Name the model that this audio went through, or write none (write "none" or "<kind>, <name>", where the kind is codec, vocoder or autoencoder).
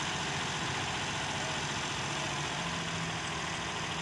none